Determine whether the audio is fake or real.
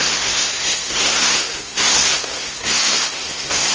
fake